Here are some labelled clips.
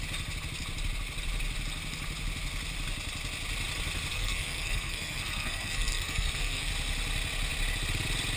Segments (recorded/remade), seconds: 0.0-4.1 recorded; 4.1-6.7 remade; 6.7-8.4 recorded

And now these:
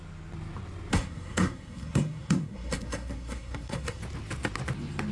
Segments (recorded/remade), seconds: 0.0-0.9 recorded; 0.9-4.0 remade; 4.0-5.1 recorded